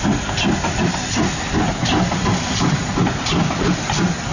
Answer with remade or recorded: recorded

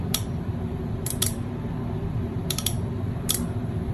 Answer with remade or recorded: remade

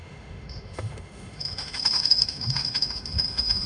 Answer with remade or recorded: remade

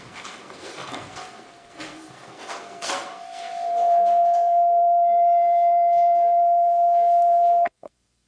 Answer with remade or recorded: remade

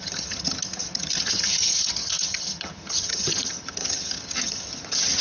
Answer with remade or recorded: remade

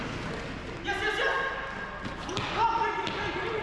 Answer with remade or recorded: recorded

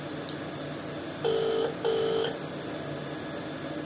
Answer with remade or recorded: recorded